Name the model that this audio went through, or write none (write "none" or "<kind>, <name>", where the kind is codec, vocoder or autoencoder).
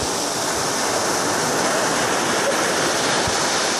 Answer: none